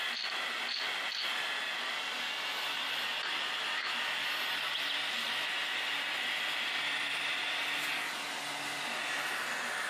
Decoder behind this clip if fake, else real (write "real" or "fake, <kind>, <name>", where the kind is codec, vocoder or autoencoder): real